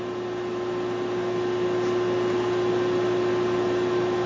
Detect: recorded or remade recorded